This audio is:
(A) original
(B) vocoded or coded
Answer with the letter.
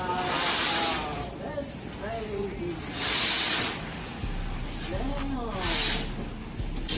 A